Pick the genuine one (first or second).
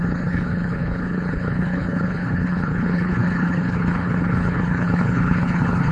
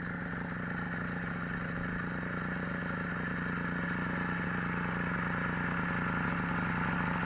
second